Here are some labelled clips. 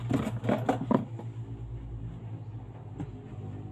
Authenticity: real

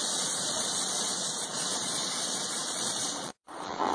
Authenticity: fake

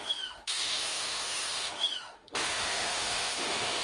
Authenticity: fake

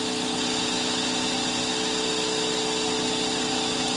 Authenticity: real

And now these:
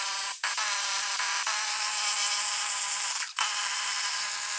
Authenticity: fake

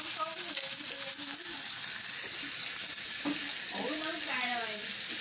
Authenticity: real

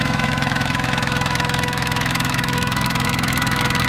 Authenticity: fake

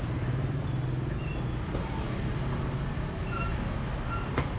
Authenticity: real